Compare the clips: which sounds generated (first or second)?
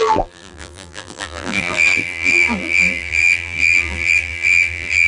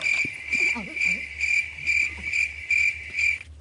first